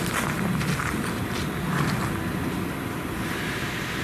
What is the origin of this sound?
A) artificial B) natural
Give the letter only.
B